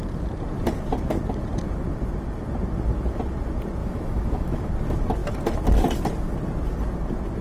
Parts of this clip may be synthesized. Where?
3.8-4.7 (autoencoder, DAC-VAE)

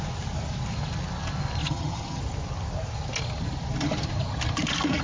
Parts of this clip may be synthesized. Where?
1.6-2.2 (vocoder, HiFi-GAN)